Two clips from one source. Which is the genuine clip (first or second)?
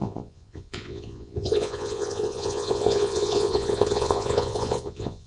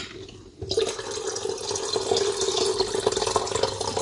second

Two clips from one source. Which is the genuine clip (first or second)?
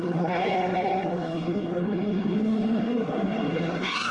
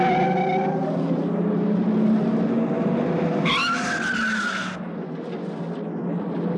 second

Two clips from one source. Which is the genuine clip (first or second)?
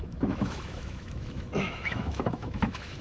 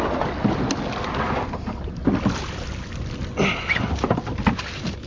second